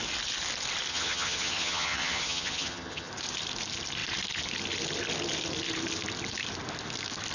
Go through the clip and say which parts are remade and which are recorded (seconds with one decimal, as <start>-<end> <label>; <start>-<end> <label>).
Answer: 0.0-0.9 recorded; 0.9-3.1 remade; 3.1-7.3 recorded